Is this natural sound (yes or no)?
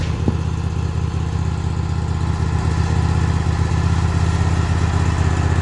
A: yes